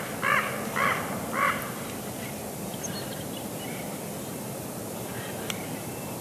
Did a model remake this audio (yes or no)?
no